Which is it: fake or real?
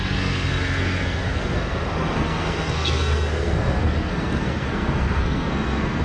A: fake